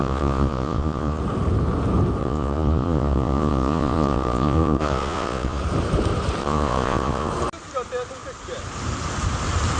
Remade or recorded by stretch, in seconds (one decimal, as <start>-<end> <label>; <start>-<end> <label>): 0.0-1.2 remade; 1.2-2.2 recorded; 2.2-5.6 remade; 5.6-6.4 recorded; 6.4-7.3 remade; 7.3-9.8 recorded